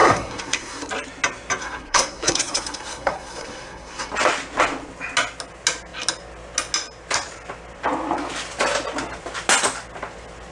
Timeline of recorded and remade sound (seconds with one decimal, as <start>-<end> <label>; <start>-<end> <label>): 0.0-0.9 remade; 0.9-1.6 recorded; 1.6-4.1 remade; 4.1-10.5 recorded